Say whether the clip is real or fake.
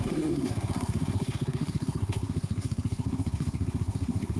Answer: fake